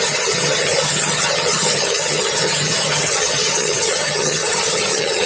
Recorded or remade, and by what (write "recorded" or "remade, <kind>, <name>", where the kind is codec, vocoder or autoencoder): remade, vocoder, HiFi-GAN